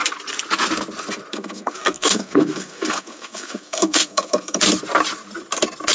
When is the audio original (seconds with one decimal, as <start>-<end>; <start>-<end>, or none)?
0.0-1.3; 4.6-5.9